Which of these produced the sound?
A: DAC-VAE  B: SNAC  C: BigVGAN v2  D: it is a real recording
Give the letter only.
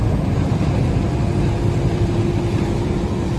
C